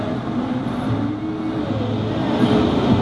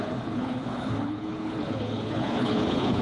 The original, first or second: first